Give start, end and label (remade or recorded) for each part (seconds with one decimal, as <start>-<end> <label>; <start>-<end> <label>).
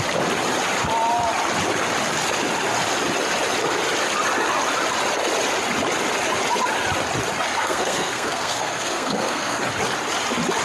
0.0-7.6 recorded; 7.6-9.6 remade; 9.6-10.6 recorded